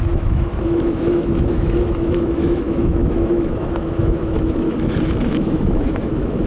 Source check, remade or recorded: remade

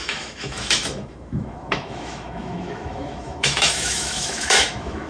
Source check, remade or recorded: remade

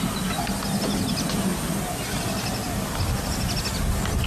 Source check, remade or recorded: recorded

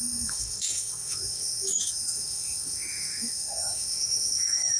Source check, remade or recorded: remade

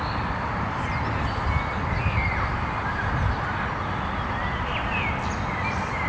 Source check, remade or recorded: recorded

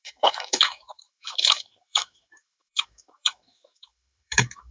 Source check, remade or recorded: remade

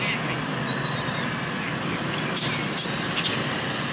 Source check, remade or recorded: recorded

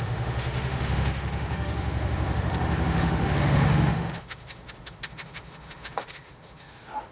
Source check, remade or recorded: remade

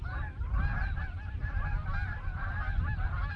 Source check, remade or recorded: recorded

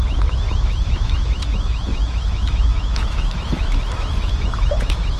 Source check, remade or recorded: remade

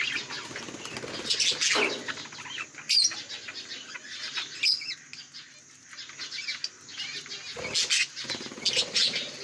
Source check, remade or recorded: recorded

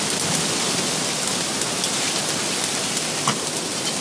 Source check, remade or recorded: recorded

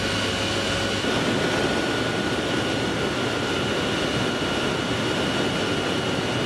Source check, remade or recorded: recorded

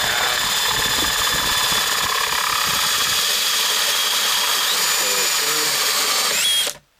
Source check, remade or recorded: recorded